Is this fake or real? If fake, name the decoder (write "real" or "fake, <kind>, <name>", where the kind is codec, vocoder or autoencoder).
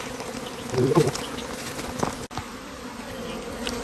real